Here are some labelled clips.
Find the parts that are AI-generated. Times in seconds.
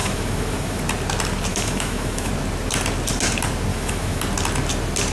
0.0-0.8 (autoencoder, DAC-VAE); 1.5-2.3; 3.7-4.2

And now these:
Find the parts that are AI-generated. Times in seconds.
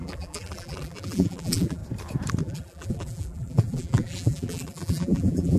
0.0-1.8 (vocoder, BigVGAN v2); 2.4-5.6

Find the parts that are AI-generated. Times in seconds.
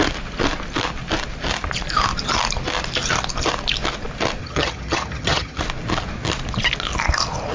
4.4-5.6 (vocoder, HiFi-GAN)